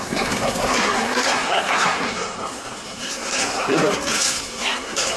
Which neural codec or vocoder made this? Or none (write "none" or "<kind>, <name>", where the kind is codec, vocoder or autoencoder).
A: codec, SNAC